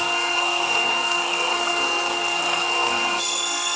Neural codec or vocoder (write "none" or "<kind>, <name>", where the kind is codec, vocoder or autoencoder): codec, SNAC